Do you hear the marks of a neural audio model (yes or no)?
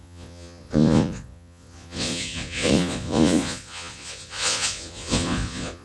yes